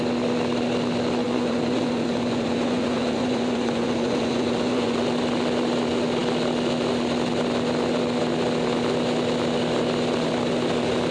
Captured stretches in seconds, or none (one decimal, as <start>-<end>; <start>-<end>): 0.0-1.2; 5.0-11.1